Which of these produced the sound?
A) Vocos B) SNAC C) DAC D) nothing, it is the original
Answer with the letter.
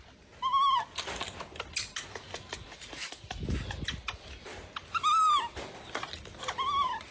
D